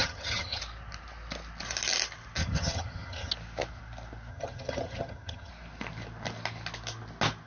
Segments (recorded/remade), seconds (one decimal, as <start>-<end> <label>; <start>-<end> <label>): 0.0-0.6 remade; 0.6-2.4 recorded; 2.4-3.3 remade; 3.3-4.3 recorded; 4.3-5.5 remade; 5.5-7.5 recorded